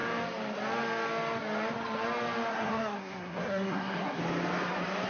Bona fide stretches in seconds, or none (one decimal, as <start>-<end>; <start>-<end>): 0.0-2.5; 4.2-5.1